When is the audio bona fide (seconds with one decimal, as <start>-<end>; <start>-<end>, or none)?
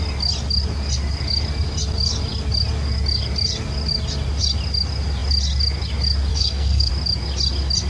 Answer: 0.0-6.3; 6.9-7.9